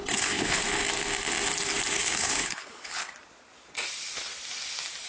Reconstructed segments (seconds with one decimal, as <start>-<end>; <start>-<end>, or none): 0.0-0.6; 2.0-3.1